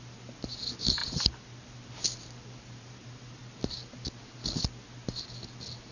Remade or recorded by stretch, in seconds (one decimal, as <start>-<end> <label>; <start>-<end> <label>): 0.0-5.9 recorded